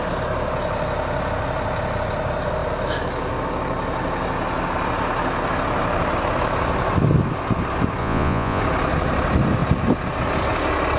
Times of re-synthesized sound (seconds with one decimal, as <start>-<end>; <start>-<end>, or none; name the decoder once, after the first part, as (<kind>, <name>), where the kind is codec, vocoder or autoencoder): 8.0-8.6 (vocoder, Vocos)